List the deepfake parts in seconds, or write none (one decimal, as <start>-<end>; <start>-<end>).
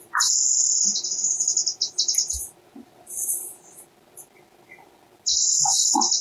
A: none